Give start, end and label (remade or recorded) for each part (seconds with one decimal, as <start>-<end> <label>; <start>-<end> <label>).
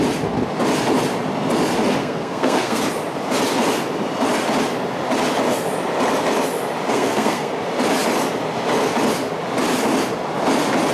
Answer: 0.0-2.0 recorded; 2.0-2.8 remade; 2.8-6.9 recorded; 6.9-7.5 remade; 7.5-10.9 recorded